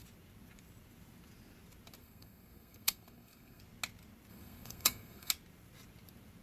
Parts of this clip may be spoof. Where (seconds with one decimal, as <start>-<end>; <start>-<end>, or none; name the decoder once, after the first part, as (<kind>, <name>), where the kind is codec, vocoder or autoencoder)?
2.0-3.6 (codec, SNAC); 4.3-5.3